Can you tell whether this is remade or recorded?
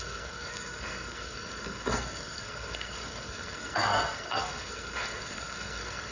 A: remade